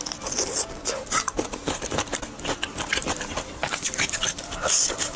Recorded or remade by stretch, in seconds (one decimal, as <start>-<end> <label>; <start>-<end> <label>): 0.0-1.6 recorded; 1.6-2.2 remade; 2.2-3.0 recorded; 3.0-5.2 remade